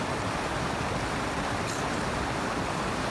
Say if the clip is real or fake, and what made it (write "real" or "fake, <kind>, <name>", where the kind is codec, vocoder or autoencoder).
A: real